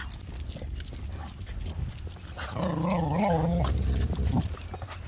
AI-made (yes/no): no